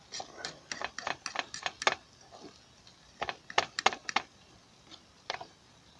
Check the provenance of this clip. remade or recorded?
recorded